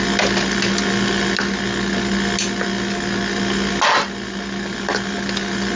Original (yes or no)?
yes